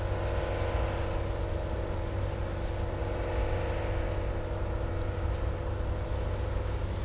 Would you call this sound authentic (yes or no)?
yes